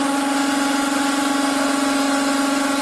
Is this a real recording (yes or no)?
yes